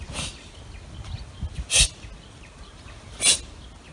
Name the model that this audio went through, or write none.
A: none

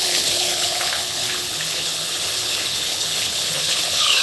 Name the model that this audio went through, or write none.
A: codec, HILCodec